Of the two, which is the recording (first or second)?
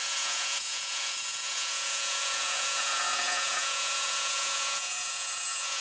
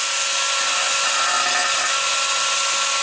second